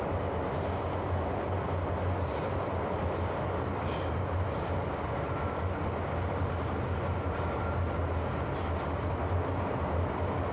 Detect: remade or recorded recorded